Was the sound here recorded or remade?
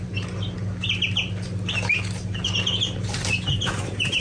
recorded